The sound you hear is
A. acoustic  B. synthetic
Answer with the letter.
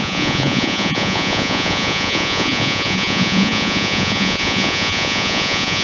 B